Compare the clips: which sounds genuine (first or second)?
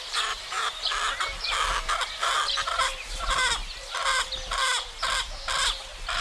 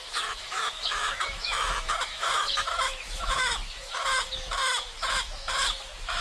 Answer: first